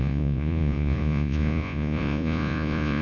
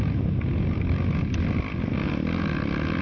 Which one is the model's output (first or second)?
first